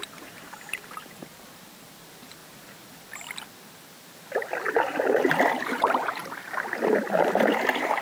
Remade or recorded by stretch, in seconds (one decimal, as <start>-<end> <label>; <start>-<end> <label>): 0.0-2.4 remade; 2.4-5.5 recorded; 5.5-6.2 remade; 6.2-6.9 recorded; 6.9-8.0 remade